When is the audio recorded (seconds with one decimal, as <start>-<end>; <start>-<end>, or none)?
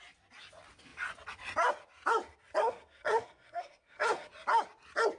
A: 0.0-2.6; 4.3-5.2